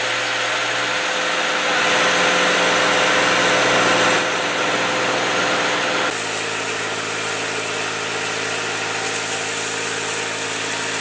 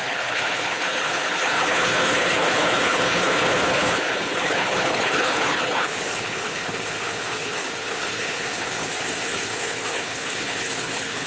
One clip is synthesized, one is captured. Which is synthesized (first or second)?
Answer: second